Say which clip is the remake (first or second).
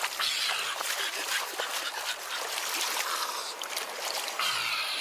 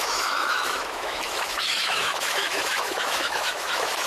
second